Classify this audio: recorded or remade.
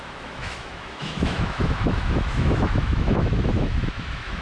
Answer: remade